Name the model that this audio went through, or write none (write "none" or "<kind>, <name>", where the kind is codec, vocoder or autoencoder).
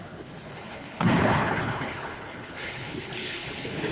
codec, HILCodec